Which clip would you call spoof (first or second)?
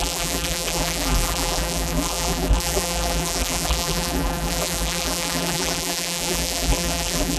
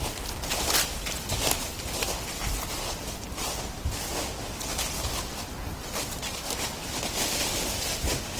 first